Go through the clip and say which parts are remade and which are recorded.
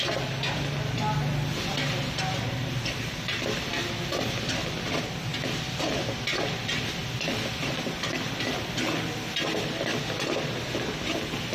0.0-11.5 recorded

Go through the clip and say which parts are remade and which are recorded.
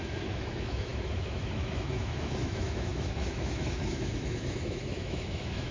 0.0-5.7 remade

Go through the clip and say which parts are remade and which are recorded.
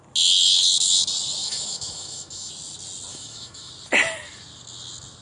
0.0-1.4 recorded; 1.4-2.5 remade; 2.5-3.1 recorded; 3.1-3.7 remade; 3.7-5.2 recorded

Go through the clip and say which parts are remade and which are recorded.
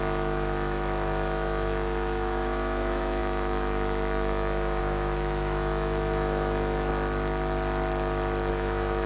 0.0-6.9 remade; 6.9-8.5 recorded; 8.5-9.1 remade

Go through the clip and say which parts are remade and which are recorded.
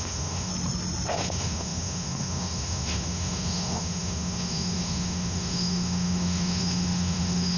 0.0-0.5 remade; 0.5-1.1 recorded; 1.1-7.6 remade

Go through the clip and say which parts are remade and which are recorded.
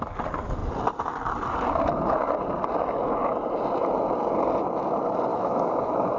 0.0-5.3 recorded; 5.3-6.2 remade